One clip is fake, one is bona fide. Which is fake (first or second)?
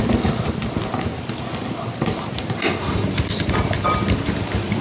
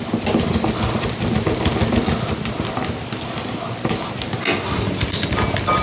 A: first